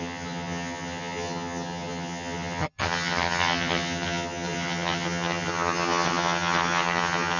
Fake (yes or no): yes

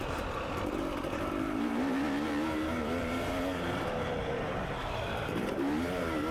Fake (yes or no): yes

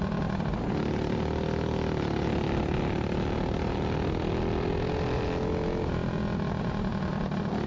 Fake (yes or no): no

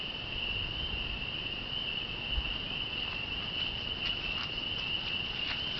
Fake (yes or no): no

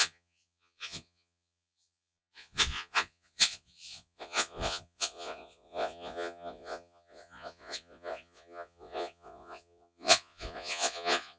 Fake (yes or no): yes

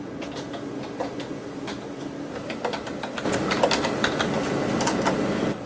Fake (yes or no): no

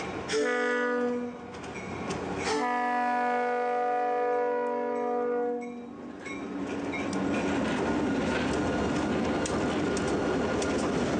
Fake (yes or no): no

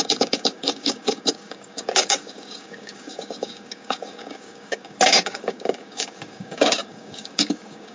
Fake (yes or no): yes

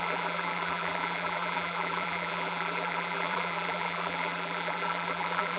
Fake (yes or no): yes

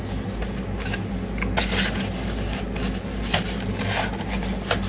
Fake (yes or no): no